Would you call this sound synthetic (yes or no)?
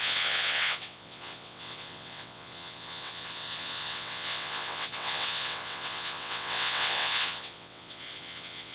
yes